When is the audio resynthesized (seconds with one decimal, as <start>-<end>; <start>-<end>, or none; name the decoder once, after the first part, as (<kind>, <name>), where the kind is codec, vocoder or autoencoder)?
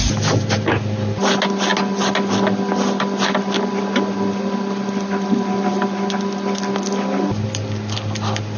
none